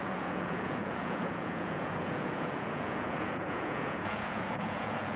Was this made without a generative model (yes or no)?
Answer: no